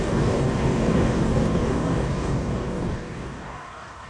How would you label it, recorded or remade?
remade